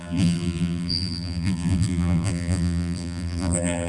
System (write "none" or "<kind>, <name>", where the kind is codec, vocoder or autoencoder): vocoder, BigVGAN v2